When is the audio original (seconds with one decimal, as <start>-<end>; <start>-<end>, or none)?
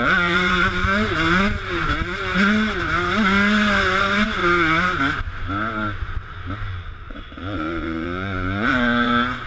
2.3-4.0; 4.4-7.1